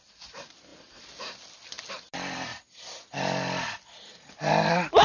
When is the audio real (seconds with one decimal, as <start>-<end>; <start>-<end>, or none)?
0.0-5.0